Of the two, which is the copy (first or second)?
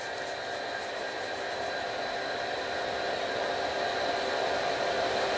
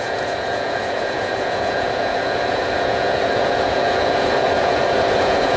second